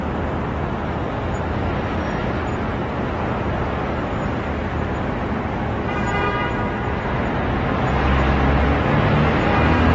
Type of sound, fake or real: real